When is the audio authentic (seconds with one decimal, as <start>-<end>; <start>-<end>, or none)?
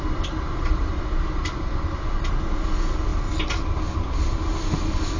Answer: 0.0-0.9; 1.9-5.2